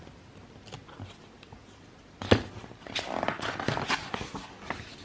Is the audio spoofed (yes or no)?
no